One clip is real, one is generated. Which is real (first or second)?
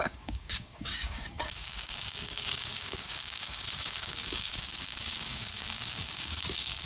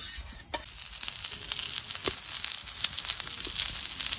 second